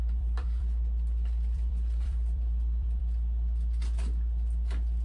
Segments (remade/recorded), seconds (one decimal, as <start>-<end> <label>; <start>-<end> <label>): 0.0-3.0 remade; 3.0-5.0 recorded